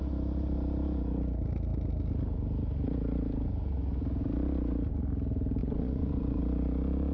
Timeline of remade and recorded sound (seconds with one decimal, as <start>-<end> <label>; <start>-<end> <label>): 0.0-5.6 recorded; 5.6-6.4 remade; 6.4-7.1 recorded